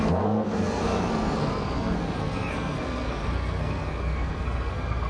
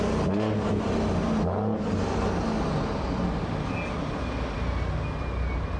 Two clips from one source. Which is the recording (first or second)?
second